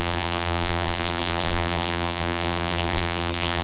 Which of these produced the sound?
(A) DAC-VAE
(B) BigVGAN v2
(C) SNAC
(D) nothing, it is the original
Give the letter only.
B